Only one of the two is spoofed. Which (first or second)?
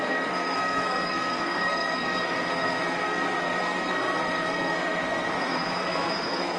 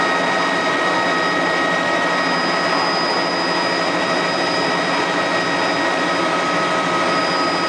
first